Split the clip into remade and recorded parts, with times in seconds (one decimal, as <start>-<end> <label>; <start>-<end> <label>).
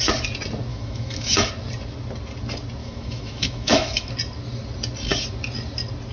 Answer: 0.0-0.7 recorded; 0.7-1.5 remade; 1.5-2.8 recorded; 2.8-4.1 remade; 4.1-6.1 recorded